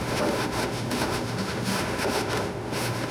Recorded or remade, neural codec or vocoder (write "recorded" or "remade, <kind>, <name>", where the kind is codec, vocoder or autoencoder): remade, autoencoder, DAC-VAE